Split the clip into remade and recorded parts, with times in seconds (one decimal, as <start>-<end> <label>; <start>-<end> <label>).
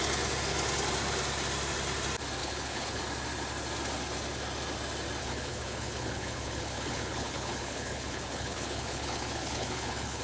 0.0-2.4 recorded; 2.4-3.0 remade; 3.0-5.2 recorded; 5.2-10.2 remade